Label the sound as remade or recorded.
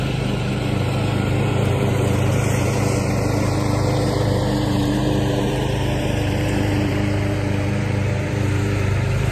remade